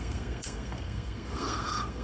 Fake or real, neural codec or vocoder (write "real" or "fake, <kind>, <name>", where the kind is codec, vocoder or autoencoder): fake, codec, SNAC